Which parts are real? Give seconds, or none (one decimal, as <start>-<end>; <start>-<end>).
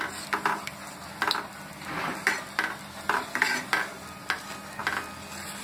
4.8-5.6